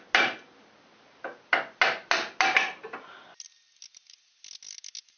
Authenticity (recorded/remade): recorded